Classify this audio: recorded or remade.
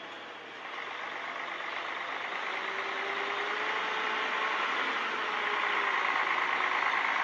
recorded